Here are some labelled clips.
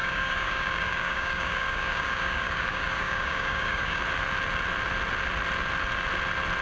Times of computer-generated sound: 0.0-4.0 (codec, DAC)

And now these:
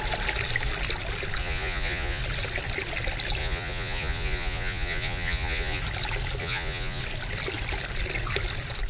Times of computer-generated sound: 1.4-2.2 (vocoder, Vocos); 3.4-5.8; 6.4-7.0

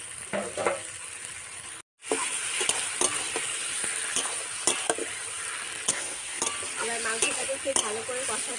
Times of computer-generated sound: 5.9-6.4 (codec, SNAC)

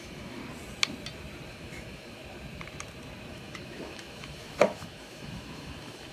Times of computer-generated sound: 0.0-0.4 (autoencoder, DAC-VAE); 1.5-2.2; 3.3-6.1